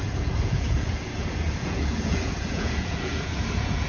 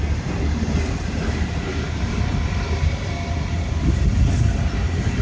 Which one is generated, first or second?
first